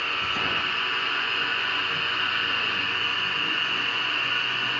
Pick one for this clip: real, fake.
fake